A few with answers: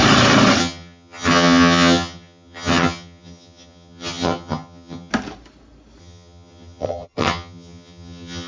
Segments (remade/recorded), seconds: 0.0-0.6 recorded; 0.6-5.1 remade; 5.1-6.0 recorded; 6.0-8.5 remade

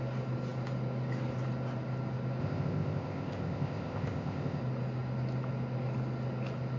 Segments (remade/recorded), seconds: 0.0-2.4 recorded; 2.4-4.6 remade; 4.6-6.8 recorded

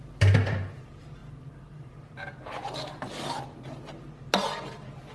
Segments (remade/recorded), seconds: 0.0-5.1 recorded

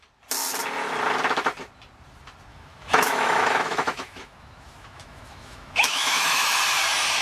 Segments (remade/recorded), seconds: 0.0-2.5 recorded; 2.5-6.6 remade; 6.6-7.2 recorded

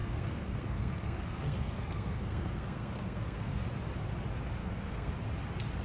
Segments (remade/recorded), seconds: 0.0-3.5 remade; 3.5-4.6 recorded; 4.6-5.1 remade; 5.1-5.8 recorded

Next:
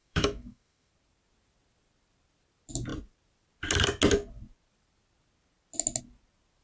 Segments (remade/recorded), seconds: 0.0-0.9 remade; 0.9-6.6 recorded

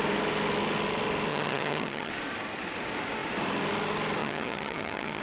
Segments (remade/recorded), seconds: 0.0-1.3 recorded; 1.3-2.1 remade; 2.1-4.2 recorded; 4.2-5.2 remade